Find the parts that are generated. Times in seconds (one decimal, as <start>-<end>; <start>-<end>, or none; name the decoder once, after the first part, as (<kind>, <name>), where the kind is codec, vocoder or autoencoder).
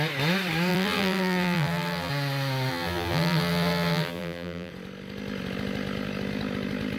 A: 0.7-2.1 (vocoder, BigVGAN v2); 2.7-4.7